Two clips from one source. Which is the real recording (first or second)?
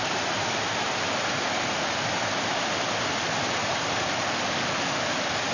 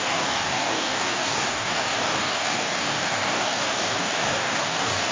first